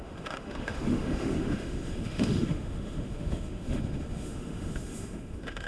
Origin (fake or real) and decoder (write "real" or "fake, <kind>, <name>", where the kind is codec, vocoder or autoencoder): fake, autoencoder, DAC-VAE